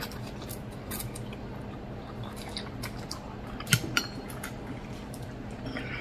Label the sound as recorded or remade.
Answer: remade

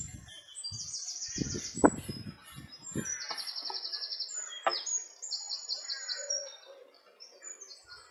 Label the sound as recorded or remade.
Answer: recorded